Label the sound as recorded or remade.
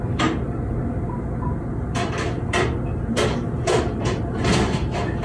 recorded